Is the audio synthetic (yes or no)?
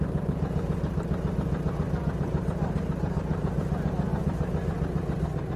no